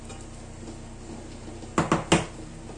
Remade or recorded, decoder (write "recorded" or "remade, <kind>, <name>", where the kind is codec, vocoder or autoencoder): recorded